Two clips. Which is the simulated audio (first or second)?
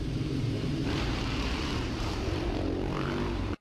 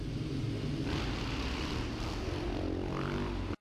first